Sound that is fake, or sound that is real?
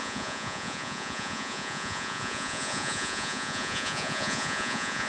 fake